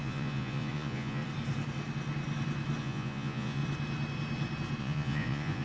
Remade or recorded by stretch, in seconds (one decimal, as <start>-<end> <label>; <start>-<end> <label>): 0.0-1.2 remade; 1.2-2.8 recorded; 2.8-3.6 remade; 3.6-4.8 recorded; 4.8-5.6 remade